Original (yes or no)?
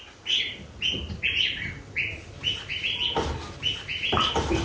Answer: yes